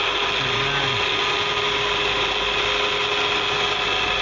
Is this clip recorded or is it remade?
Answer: recorded